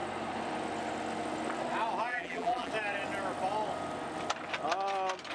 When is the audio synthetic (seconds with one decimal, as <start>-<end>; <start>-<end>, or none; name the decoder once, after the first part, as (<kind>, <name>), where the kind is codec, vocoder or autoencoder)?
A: 2.1-2.7 (vocoder, BigVGAN v2)